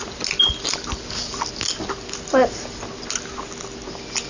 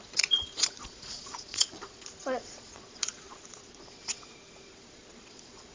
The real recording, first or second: first